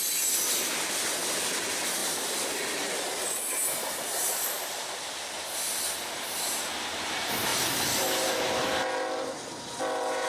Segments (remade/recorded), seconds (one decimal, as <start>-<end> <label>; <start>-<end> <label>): 0.0-10.3 recorded